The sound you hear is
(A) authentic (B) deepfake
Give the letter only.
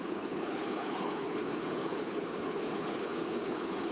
B